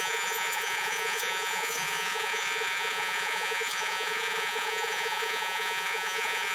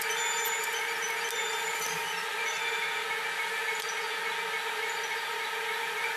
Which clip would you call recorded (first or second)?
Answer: second